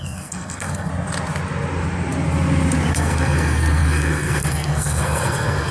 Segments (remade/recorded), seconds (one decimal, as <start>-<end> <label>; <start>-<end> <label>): 0.0-0.9 remade; 0.9-2.9 recorded; 2.9-5.7 remade